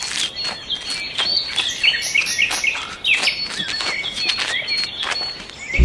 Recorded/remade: recorded